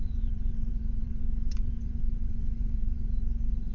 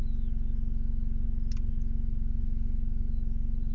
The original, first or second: second